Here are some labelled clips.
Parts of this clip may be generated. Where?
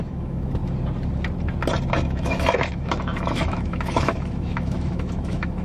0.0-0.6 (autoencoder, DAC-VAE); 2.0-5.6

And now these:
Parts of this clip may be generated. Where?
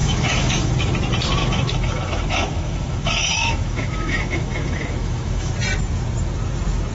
0.0-0.9 (autoencoder, DAC-VAE); 1.4-5.5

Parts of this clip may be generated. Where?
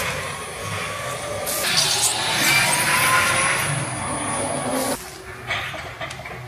0.6-1.1 (codec, DAC)